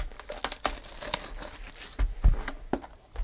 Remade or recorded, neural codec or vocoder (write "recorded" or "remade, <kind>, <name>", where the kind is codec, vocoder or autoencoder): recorded